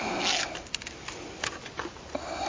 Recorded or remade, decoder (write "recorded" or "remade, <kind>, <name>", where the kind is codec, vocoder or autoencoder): recorded